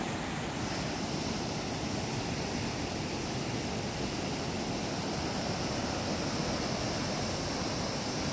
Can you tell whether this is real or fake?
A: real